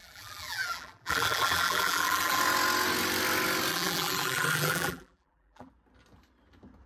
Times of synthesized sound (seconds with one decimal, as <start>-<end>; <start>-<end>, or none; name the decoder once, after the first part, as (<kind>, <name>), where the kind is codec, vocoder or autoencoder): 0.0-2.4 (vocoder, BigVGAN v2); 3.7-5.7